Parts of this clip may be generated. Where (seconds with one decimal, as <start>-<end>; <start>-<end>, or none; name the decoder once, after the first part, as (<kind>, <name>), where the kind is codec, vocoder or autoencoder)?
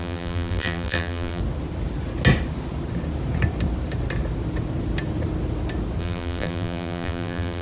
0.0-1.4 (vocoder, BigVGAN v2); 6.0-7.6